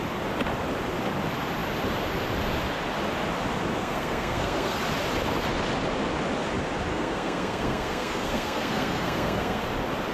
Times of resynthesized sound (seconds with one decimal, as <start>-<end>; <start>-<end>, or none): 3.8-4.8; 6.9-9.6